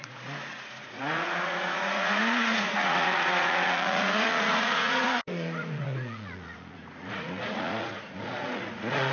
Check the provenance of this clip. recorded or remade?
remade